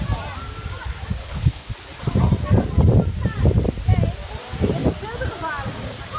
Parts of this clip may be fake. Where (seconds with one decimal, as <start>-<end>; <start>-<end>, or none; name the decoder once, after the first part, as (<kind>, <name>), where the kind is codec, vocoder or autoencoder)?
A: 1.2-1.7 (codec, HILCodec)